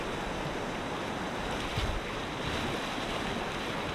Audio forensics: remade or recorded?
recorded